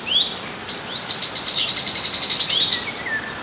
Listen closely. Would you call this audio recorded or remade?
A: recorded